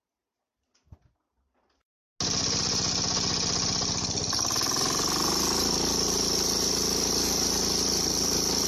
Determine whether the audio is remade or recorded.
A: recorded